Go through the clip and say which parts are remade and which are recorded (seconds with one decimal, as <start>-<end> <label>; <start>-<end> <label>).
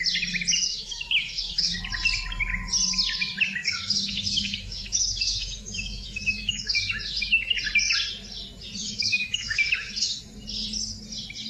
0.0-0.6 recorded; 0.6-1.7 remade; 1.7-3.6 recorded; 3.6-7.5 remade; 7.5-8.8 recorded; 8.8-10.2 remade; 10.2-11.5 recorded